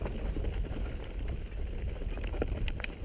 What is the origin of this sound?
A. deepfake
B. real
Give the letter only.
B